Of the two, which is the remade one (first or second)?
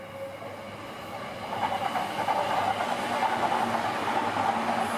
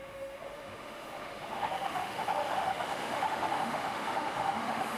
second